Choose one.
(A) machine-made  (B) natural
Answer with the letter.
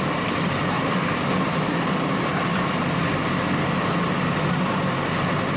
B